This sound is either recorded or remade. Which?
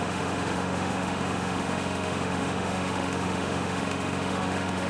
remade